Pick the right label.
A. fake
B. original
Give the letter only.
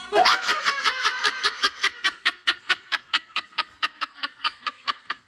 A